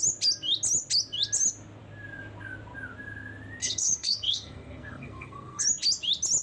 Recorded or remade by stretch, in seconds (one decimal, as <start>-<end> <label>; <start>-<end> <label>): 0.0-3.6 recorded; 3.6-5.6 remade; 5.6-6.4 recorded